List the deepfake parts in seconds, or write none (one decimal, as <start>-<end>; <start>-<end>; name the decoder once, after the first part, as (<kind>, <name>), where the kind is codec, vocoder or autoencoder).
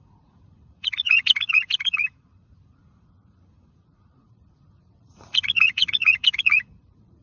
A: 0.0-7.2 (vocoder, Vocos)